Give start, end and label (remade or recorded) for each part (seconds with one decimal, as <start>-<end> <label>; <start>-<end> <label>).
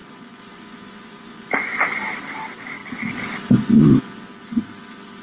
0.0-2.1 remade; 2.1-5.2 recorded